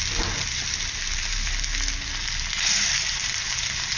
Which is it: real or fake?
real